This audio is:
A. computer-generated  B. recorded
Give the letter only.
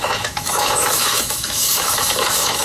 A